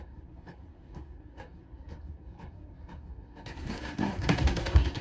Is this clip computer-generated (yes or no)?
yes